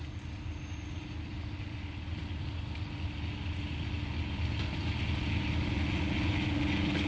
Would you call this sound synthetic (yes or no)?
no